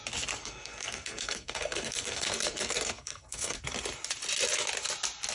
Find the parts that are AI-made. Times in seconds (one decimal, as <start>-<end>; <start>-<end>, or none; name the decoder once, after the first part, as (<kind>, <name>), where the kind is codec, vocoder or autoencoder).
0.4-3.6 (codec, SNAC)